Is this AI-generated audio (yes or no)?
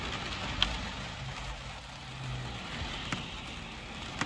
no